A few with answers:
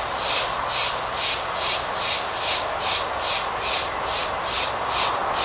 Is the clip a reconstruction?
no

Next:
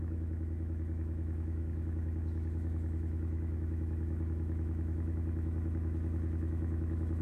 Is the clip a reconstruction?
yes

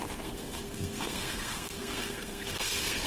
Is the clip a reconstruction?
yes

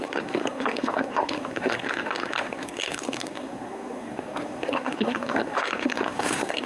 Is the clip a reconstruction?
yes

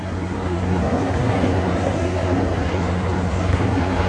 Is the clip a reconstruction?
yes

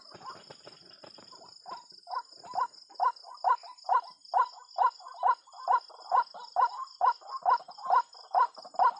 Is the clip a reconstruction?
no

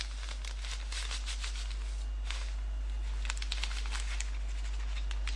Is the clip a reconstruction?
no